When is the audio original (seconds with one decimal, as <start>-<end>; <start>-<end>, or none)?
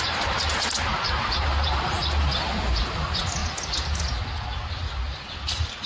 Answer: 2.0-2.8; 3.4-5.5